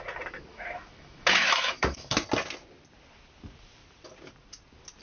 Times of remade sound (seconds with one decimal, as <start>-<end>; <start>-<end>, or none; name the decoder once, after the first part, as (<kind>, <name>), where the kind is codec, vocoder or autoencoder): 0.5-2.2 (autoencoder, DAC-VAE)

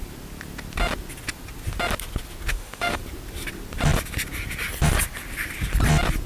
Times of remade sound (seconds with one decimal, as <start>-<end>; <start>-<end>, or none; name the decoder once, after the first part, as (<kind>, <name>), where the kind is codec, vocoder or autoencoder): 2.5-3.0 (autoencoder, DAC-VAE)

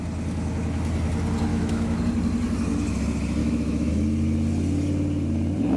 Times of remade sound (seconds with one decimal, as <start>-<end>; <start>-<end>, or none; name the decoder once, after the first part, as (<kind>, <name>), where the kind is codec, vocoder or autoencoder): 1.5-2.0 (autoencoder, DAC-VAE); 3.4-3.9

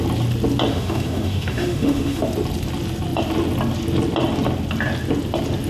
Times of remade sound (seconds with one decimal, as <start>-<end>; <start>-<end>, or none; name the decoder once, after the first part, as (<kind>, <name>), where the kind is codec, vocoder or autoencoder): 0.7-2.2 (autoencoder, DAC-VAE)

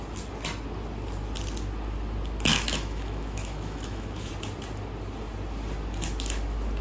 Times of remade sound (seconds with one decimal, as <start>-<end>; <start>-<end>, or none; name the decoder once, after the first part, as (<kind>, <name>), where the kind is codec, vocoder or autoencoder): 2.5-4.3 (autoencoder, DAC-VAE)

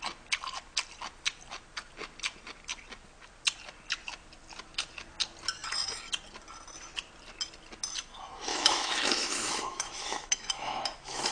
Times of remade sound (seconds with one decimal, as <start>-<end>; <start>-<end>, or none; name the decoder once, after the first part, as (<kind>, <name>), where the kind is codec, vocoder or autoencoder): 8.5-11.3 (autoencoder, DAC-VAE)

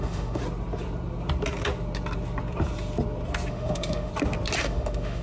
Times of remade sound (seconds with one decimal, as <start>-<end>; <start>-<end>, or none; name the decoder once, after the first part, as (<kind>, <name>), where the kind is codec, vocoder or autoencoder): 0.0-0.4 (autoencoder, DAC-VAE); 3.5-4.1; 4.6-5.2